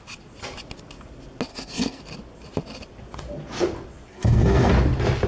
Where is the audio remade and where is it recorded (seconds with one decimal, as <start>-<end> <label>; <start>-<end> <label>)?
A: 0.0-1.5 recorded; 1.5-2.0 remade; 2.0-4.1 recorded; 4.1-4.7 remade; 4.7-5.3 recorded